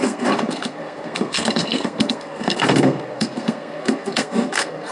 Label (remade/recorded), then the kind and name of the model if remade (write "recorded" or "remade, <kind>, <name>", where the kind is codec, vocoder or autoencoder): remade, codec, SNAC